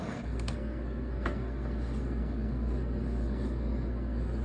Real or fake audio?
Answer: fake